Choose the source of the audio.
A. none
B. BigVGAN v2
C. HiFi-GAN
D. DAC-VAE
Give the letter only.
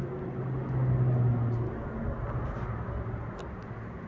A